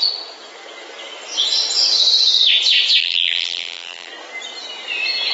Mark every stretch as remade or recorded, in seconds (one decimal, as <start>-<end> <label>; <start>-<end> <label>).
0.0-3.0 recorded; 3.0-4.1 remade; 4.1-5.3 recorded